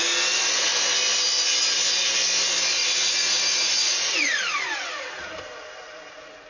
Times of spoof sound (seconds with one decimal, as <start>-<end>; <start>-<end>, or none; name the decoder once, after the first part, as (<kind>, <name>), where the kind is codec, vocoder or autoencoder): 2.8-5.1 (vocoder, Vocos)